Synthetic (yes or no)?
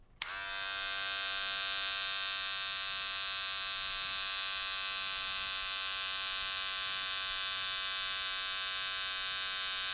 no